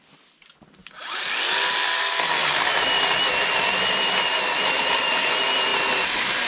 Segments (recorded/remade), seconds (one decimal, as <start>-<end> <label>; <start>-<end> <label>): 0.0-6.5 recorded